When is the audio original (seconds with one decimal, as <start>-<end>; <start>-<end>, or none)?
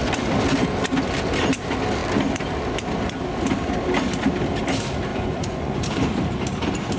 0.0-5.1; 5.8-7.0